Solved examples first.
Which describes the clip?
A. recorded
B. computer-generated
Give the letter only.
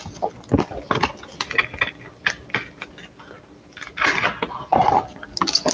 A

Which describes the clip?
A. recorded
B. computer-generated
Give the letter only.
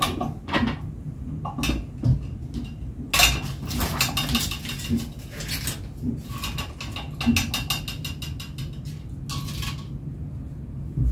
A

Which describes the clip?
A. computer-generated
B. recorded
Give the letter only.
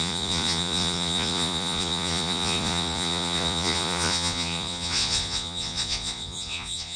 A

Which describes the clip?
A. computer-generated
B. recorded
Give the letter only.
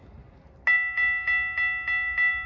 B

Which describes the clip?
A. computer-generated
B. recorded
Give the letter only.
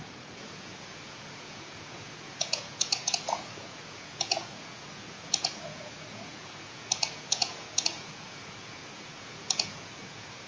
A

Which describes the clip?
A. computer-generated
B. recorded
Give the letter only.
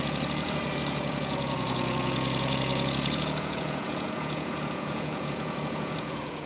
A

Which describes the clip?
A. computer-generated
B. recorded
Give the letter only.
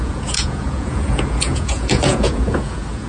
A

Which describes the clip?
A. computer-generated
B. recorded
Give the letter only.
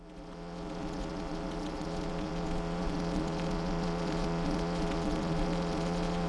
A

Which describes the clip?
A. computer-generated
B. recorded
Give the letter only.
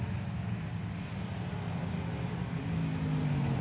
B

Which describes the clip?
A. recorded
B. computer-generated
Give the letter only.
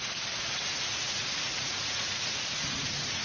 B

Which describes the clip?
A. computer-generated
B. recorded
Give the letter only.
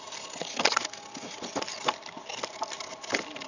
B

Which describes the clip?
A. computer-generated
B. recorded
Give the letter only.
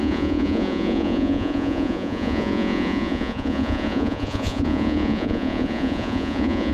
A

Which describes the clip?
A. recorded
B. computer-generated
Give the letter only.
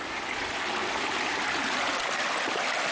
A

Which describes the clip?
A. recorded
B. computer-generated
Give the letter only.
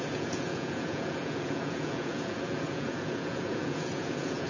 B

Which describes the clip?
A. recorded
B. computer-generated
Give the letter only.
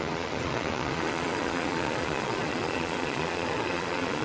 B